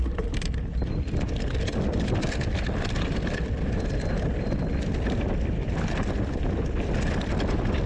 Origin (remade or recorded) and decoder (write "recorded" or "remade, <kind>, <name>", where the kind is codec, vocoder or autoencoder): remade, vocoder, BigVGAN v2